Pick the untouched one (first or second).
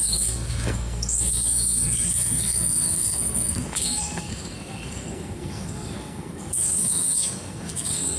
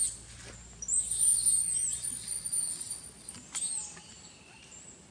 second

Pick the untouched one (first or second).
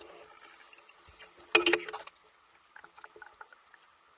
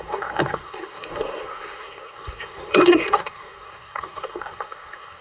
first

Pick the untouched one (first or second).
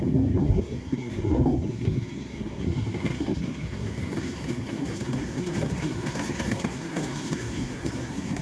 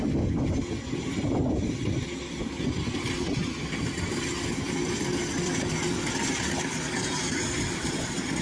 second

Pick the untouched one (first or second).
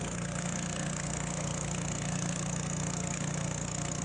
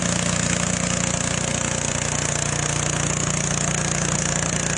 second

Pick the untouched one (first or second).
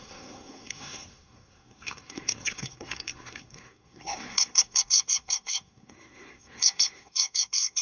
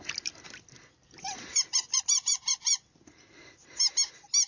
second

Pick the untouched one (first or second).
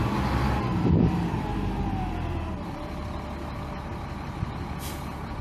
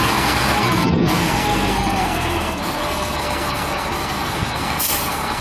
first